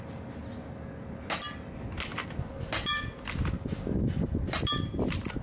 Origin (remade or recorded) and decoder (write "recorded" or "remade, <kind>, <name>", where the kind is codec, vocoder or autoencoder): recorded